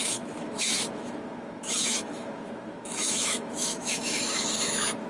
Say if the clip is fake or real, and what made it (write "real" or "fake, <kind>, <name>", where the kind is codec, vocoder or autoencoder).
fake, autoencoder, DAC-VAE